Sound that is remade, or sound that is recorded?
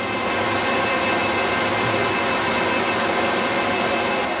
recorded